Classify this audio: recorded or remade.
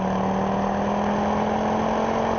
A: recorded